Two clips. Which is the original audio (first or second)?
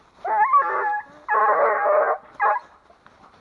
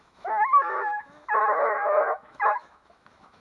first